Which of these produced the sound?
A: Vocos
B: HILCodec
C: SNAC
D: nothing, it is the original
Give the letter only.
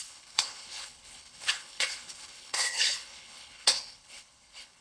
B